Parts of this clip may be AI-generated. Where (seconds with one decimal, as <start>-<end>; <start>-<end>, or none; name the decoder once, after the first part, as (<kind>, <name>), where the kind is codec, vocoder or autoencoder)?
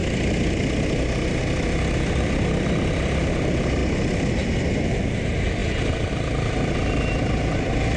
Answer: 2.2-3.8 (vocoder, BigVGAN v2); 4.9-5.6; 6.1-8.0